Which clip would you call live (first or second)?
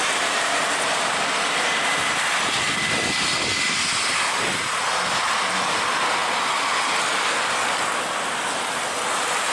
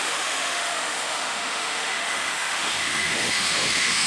first